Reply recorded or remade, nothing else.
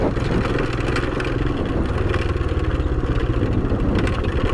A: recorded